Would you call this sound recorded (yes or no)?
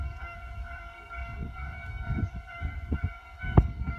no